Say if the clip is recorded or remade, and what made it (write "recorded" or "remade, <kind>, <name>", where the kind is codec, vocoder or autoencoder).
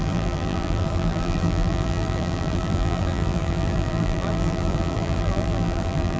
remade, vocoder, BigVGAN v2